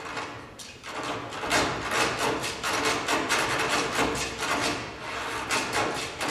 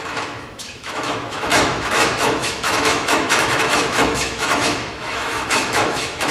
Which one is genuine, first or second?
first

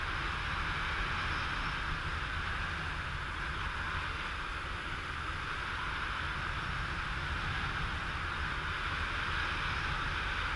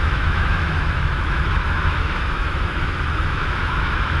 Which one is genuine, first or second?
first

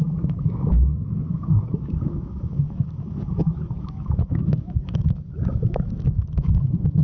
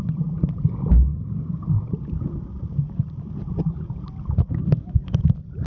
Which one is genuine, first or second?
second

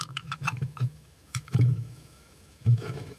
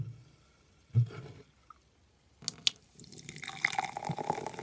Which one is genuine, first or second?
second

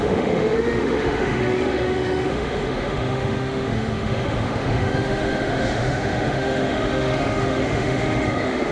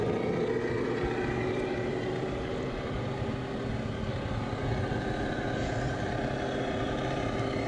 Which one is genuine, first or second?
second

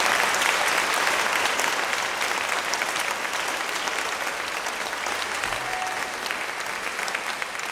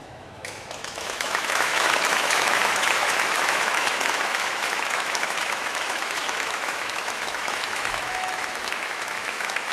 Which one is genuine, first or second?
first